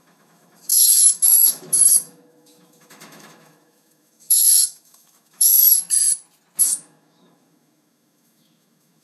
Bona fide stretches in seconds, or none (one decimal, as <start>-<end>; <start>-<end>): 5.6-6.6